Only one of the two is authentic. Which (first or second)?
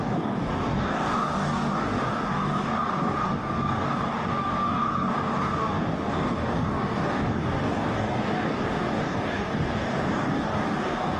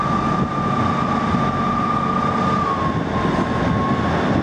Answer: second